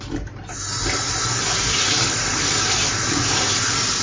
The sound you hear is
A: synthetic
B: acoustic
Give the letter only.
B